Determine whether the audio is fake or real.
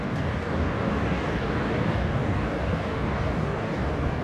fake